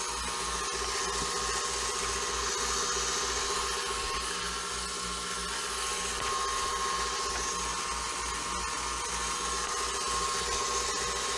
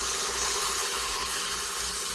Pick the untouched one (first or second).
first